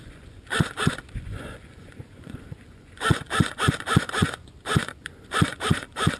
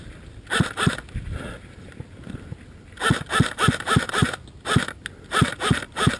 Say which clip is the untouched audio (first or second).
second